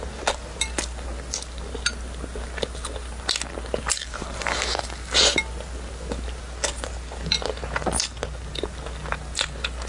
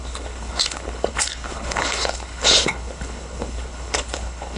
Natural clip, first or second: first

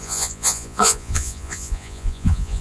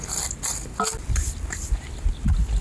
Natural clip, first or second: second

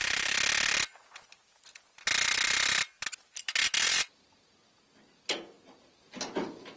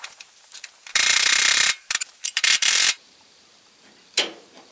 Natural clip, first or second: first